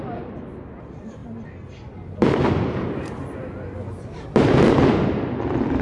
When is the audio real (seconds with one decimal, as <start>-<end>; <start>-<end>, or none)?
0.0-5.8